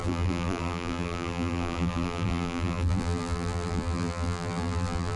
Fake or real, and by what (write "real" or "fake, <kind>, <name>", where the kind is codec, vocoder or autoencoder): fake, vocoder, BigVGAN v2